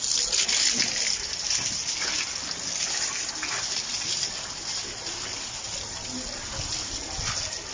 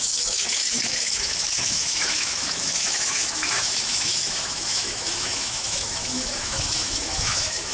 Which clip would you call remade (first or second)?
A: second